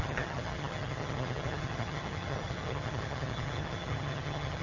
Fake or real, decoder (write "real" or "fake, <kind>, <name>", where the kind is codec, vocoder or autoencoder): fake, vocoder, HiFi-GAN